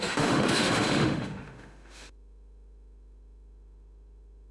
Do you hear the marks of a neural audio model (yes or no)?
yes